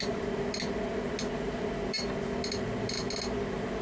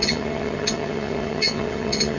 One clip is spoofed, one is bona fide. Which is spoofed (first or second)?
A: second